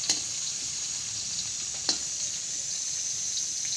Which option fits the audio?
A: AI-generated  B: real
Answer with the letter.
B